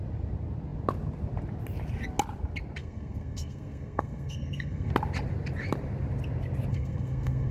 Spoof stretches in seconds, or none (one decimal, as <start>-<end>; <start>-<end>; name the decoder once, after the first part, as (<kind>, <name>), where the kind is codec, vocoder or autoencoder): 2.8-4.9 (codec, SNAC); 6.7-7.5